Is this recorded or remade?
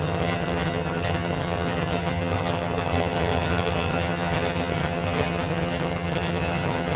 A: remade